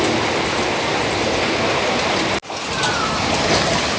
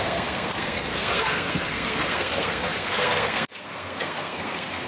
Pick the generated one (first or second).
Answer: second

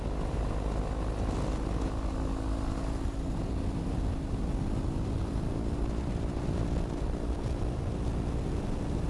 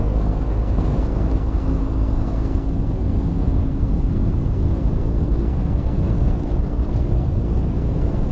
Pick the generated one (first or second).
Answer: second